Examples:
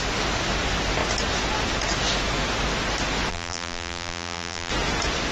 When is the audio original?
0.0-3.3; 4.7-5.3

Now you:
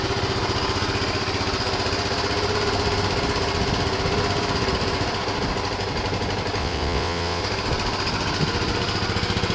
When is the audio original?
0.0-6.6; 7.4-9.5

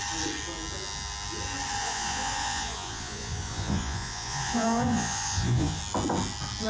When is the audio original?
0.0-1.8; 5.8-6.7

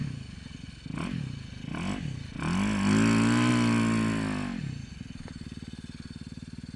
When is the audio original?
0.0-6.8